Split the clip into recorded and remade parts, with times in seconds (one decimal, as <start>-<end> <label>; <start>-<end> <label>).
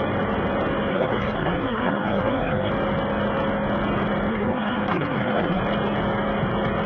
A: 0.0-0.9 recorded; 0.9-2.7 remade; 2.7-4.3 recorded; 4.3-5.6 remade; 5.6-6.9 recorded